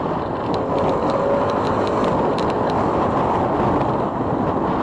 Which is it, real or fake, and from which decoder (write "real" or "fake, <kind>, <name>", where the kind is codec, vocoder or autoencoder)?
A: real